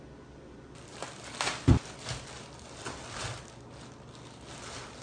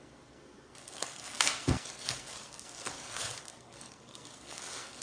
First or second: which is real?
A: first